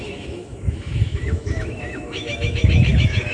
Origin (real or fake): fake